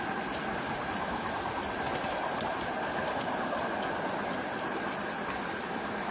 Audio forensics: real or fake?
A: real